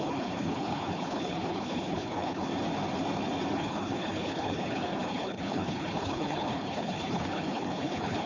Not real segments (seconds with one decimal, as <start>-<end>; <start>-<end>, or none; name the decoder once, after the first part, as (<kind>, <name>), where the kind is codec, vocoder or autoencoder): 0.0-2.5 (codec, HILCodec); 3.5-8.3